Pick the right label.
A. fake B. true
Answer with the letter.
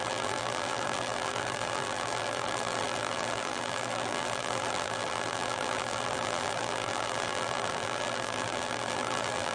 A